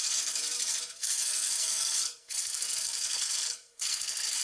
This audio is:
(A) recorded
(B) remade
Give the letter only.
B